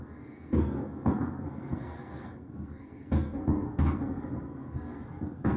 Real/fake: fake